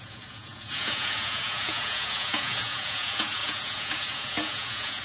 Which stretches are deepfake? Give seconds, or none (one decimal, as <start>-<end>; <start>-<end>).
0.0-5.0